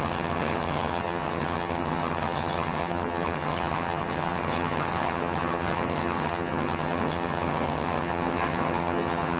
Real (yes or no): no